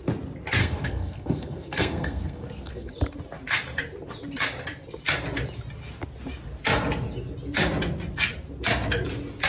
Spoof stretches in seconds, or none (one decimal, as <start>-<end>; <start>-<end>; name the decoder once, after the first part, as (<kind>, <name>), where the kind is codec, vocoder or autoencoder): 0.6-2.9 (codec, SNAC)